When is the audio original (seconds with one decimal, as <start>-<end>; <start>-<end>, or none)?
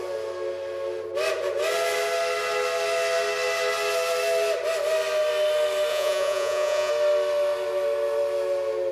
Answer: 0.0-5.9; 6.9-8.9